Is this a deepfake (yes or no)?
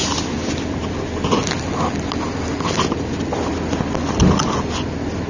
no